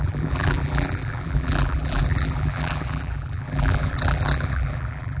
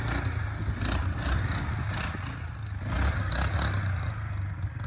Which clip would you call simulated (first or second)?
first